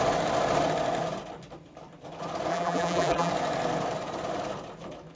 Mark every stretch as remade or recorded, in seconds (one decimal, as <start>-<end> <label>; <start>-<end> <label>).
0.0-2.5 recorded; 2.5-3.3 remade; 3.3-5.2 recorded